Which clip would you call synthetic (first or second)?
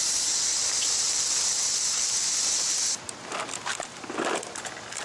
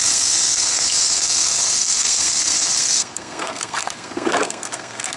second